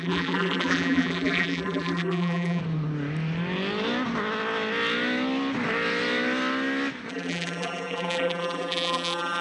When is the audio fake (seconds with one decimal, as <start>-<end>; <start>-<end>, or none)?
0.0-2.6; 7.1-9.4